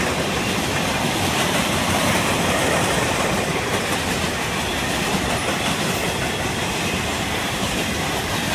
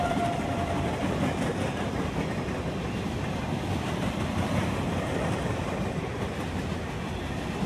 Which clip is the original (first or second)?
second